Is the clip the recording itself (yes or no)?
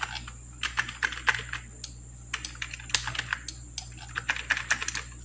yes